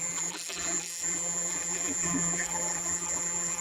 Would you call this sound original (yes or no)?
no